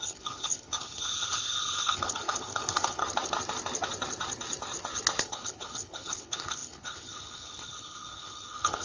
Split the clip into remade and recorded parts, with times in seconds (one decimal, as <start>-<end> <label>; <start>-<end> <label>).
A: 0.0-3.0 remade; 3.0-5.2 recorded; 5.2-8.8 remade

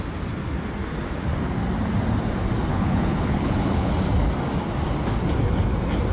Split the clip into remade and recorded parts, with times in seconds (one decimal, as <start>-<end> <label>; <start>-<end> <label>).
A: 0.0-2.7 recorded; 2.7-3.9 remade; 3.9-6.1 recorded

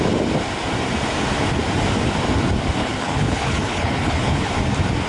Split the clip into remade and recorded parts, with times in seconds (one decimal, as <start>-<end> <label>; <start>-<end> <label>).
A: 0.0-2.8 recorded; 2.8-4.5 remade; 4.5-5.1 recorded

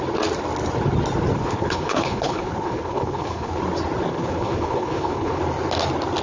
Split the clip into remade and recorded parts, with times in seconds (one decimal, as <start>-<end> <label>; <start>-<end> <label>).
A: 0.0-1.4 recorded; 1.4-3.6 remade; 3.6-4.1 recorded; 4.1-5.4 remade; 5.4-6.2 recorded

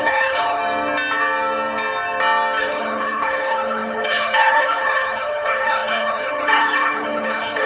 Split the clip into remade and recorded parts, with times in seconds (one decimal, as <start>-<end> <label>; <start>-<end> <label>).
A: 0.0-0.6 remade; 0.6-2.6 recorded; 2.6-7.7 remade

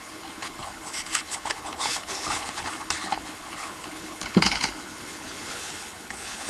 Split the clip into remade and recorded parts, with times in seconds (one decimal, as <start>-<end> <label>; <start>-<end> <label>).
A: 0.0-6.5 remade